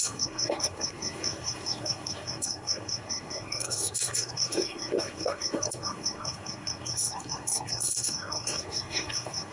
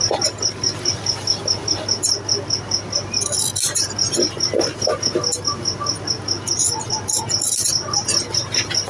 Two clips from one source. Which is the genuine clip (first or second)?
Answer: second